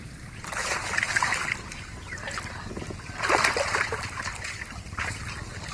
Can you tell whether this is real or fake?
real